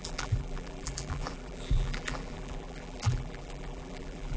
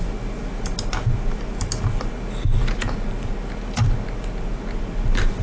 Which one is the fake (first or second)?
first